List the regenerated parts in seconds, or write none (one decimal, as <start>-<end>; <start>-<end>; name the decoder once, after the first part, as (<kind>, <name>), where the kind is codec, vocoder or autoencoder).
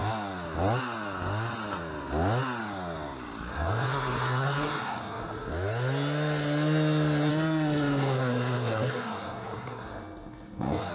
3.5-5.5 (codec, SNAC); 7.3-10.9